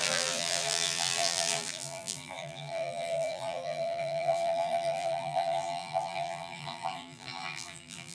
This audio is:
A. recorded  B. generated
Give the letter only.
B